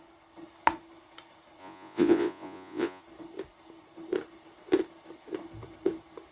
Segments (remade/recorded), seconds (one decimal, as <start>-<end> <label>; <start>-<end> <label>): 0.0-1.6 recorded; 1.6-3.0 remade; 3.0-6.3 recorded